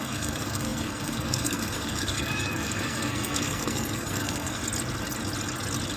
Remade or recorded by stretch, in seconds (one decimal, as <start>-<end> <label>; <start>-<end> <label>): 0.0-4.6 remade; 4.6-6.0 recorded